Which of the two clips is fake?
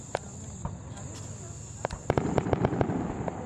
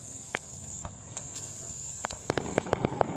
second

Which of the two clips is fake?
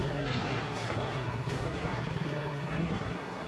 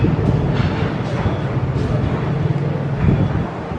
first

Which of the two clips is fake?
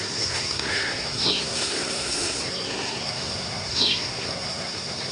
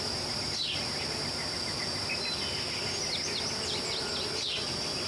first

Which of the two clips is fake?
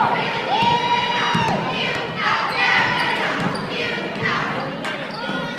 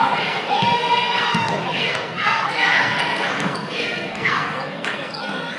second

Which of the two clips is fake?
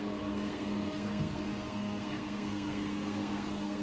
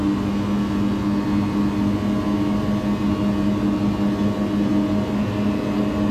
first